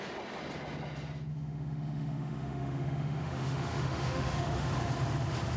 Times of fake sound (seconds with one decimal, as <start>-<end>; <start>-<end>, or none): 1.3-4.7